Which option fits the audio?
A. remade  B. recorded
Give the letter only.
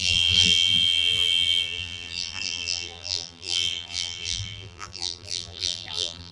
A